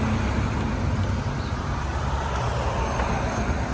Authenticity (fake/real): real